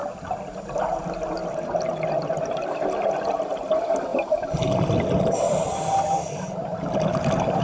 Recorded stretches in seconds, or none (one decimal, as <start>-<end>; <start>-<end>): 0.0-7.6